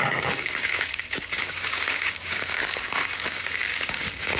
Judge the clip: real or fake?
fake